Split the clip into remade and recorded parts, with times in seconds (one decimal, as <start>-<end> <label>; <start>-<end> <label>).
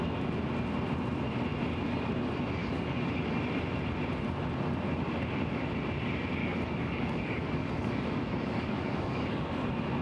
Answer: 0.0-2.6 recorded; 2.6-3.3 remade; 3.3-6.4 recorded; 6.4-9.5 remade; 9.5-10.0 recorded